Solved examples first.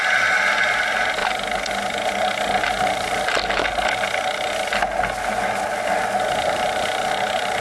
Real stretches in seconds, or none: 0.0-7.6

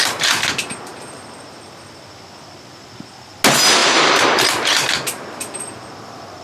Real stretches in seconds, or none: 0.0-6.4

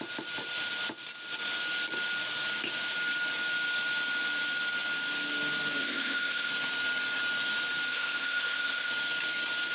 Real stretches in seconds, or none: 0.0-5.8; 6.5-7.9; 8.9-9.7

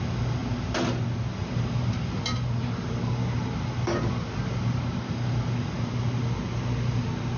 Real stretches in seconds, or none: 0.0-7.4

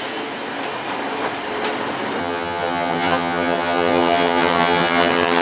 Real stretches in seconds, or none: 0.0-2.2

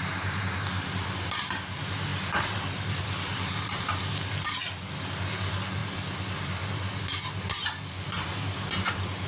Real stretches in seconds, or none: 0.0-2.1; 4.9-9.3